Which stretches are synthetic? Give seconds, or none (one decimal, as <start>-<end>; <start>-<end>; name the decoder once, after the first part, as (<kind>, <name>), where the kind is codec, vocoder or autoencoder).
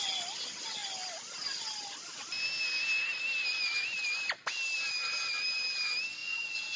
6.2-6.8 (vocoder, Vocos)